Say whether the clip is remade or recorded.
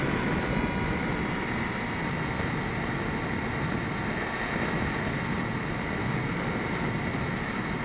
recorded